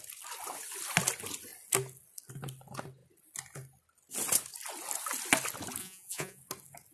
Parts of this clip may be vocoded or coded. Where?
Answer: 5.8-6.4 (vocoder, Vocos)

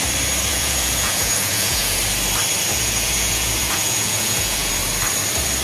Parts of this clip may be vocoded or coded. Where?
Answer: 0.5-2.0 (vocoder, Vocos); 2.7-4.7

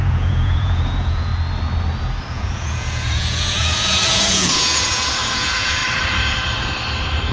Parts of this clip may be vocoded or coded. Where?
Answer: 0.0-1.3 (vocoder, Vocos); 2.3-5.8

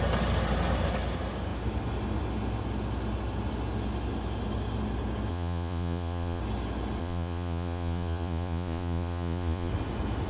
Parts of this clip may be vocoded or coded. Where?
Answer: 5.3-6.4 (vocoder, Vocos); 7.0-9.7

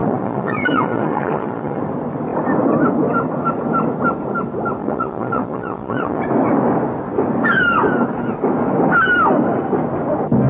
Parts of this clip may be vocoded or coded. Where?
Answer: 0.0-1.8 (vocoder, Vocos); 4.8-6.2

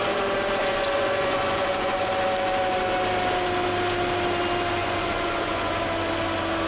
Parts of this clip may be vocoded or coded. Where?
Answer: 0.6-2.1 (vocoder, Vocos); 4.8-5.8